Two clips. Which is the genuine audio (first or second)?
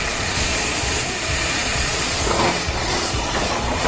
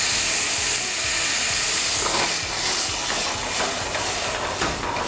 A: second